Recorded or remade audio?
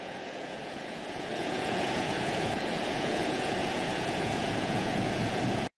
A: remade